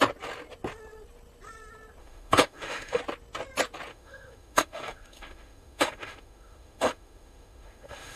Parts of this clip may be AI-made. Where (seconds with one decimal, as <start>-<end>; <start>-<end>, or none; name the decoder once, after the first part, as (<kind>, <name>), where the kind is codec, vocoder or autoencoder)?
2.0-3.0 (autoencoder, DAC-VAE); 3.9-8.2